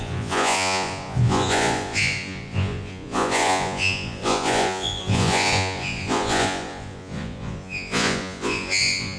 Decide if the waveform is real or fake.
fake